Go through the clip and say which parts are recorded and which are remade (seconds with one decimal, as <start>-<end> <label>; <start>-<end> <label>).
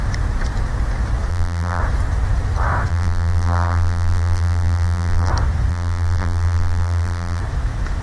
0.0-1.3 recorded; 1.3-1.8 remade; 1.8-2.9 recorded; 2.9-5.3 remade; 5.3-5.7 recorded; 5.7-7.4 remade; 7.4-8.0 recorded